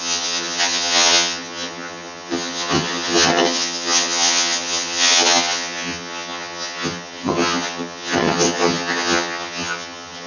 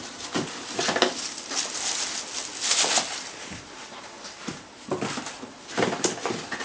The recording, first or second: second